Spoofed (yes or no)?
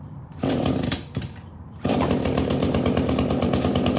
yes